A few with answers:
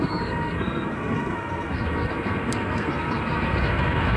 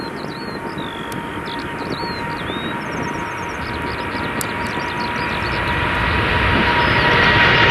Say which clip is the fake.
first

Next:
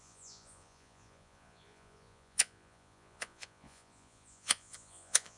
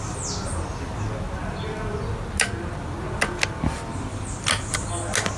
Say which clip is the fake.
first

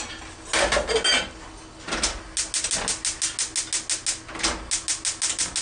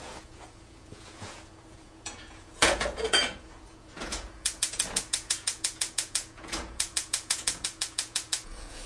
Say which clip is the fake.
second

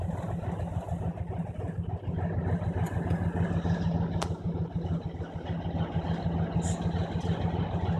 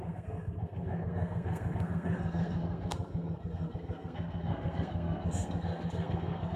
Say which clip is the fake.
second